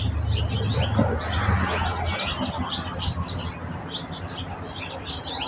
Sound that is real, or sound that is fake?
real